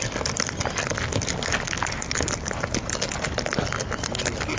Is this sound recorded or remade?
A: recorded